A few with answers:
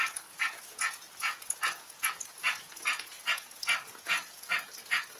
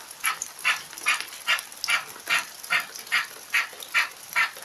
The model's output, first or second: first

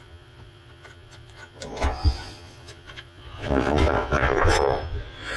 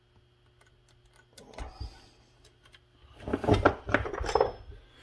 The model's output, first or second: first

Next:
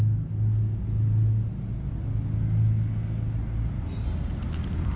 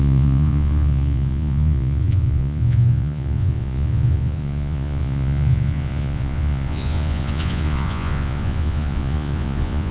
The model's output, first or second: second